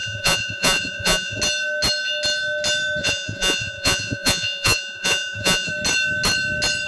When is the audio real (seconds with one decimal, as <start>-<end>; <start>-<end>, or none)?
1.4-3.0; 5.7-6.9